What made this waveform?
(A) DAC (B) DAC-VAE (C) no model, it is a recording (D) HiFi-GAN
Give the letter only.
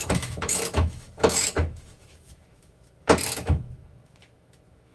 B